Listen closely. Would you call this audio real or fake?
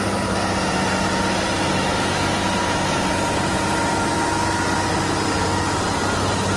real